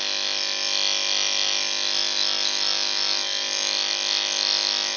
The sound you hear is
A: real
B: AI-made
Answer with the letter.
A